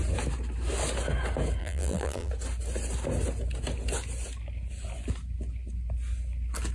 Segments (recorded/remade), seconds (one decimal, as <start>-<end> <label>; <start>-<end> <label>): 0.0-1.6 recorded; 1.6-2.3 remade; 2.3-6.7 recorded